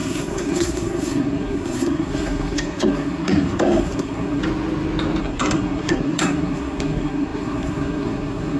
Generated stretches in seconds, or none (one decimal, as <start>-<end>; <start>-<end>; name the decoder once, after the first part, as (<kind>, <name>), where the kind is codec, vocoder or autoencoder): 0.0-4.4 (codec, SNAC); 5.2-8.6